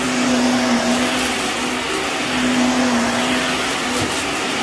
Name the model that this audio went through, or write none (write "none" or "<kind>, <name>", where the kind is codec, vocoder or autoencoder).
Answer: none